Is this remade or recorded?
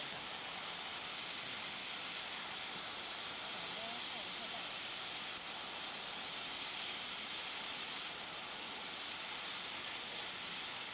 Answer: recorded